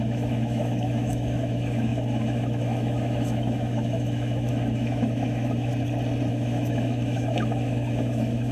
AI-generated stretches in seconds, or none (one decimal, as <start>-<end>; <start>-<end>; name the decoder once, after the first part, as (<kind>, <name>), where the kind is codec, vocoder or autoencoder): 0.0-5.7 (autoencoder, DAC-VAE); 6.3-8.5